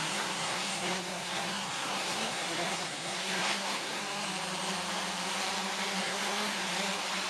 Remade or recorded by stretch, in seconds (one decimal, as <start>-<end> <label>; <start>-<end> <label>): 0.0-4.0 remade; 4.0-6.0 recorded; 6.0-6.7 remade; 6.7-7.3 recorded